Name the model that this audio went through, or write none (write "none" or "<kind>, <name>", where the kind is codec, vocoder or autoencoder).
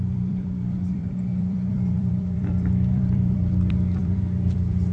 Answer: vocoder, BigVGAN v2